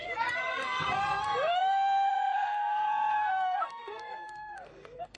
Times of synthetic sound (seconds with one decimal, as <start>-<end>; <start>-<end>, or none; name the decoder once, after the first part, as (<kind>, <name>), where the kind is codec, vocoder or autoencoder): 0.0-5.2 (codec, SNAC)

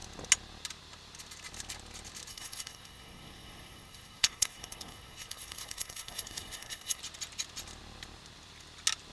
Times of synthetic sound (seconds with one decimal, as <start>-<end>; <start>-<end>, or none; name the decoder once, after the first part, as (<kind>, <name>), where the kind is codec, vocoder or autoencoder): 2.3-7.0 (codec, SNAC)

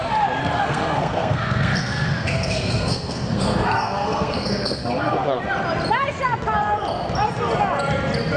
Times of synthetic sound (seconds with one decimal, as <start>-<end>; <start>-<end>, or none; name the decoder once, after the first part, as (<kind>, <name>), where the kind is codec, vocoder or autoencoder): 0.4-5.4 (codec, SNAC)

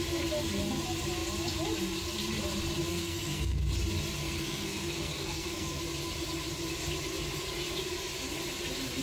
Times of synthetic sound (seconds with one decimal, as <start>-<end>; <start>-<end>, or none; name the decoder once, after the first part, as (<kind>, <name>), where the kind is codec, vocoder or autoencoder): 2.9-3.7 (codec, SNAC); 4.2-5.8